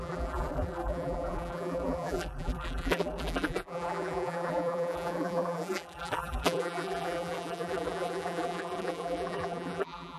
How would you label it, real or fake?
fake